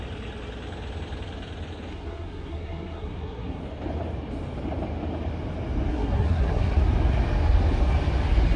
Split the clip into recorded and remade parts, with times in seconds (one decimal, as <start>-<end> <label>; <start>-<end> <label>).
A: 0.0-1.9 recorded; 1.9-3.6 remade; 3.6-5.9 recorded; 5.9-6.8 remade; 6.8-8.6 recorded